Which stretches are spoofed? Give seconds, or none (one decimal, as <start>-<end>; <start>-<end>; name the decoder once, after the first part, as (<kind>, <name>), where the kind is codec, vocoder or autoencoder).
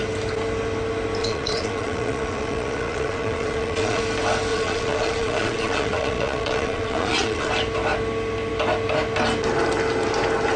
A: 1.2-4.0 (vocoder, Vocos); 4.5-7.5